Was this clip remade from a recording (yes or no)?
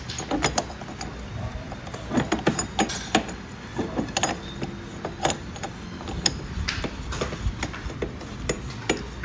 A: no